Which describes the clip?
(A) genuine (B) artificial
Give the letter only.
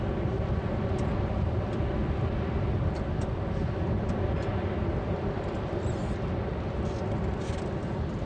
A